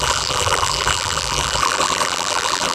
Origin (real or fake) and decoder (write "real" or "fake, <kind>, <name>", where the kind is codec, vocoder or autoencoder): fake, vocoder, BigVGAN v2